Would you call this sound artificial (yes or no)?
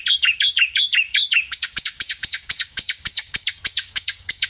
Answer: yes